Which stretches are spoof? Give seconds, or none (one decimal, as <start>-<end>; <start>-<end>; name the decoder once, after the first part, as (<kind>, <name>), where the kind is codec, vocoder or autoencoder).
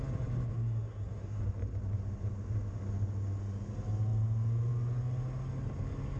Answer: 0.5-1.4 (codec, SNAC)